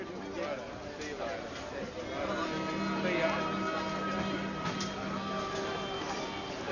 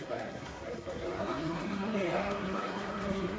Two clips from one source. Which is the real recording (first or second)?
first